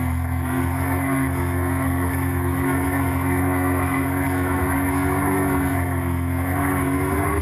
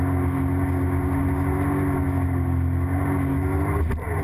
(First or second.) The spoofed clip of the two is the first